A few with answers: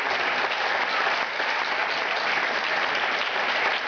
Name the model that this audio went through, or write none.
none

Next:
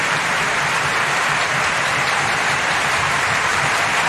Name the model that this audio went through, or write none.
vocoder, BigVGAN v2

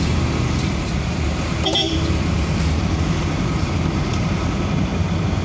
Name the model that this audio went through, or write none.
vocoder, BigVGAN v2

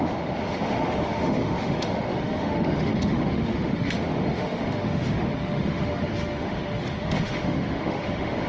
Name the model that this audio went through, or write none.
autoencoder, DAC-VAE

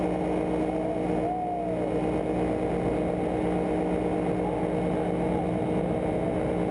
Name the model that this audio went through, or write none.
none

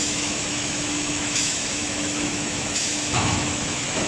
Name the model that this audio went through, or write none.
autoencoder, DAC-VAE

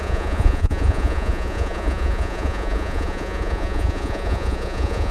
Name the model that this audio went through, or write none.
vocoder, Vocos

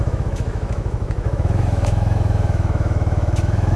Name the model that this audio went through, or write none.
autoencoder, DAC-VAE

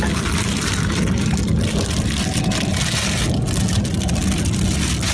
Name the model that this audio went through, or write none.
none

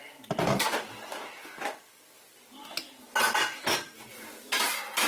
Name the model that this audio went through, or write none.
none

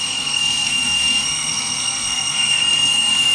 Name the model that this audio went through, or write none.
codec, SNAC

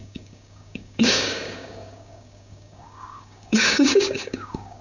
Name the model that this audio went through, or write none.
codec, DAC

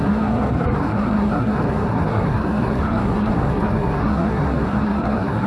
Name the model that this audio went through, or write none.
codec, SNAC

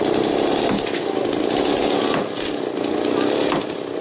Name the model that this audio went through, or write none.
none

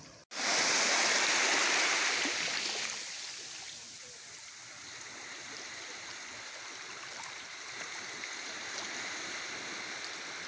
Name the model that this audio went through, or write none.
none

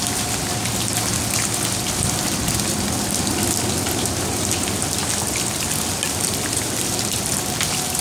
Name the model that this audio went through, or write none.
none